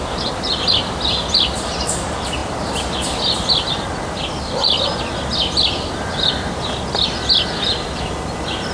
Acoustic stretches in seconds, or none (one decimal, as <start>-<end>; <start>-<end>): 0.0-8.7